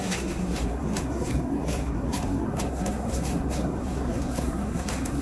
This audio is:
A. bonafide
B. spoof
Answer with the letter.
B